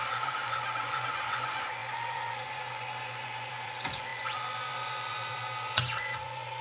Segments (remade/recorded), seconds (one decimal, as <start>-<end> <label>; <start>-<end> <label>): 0.0-6.6 remade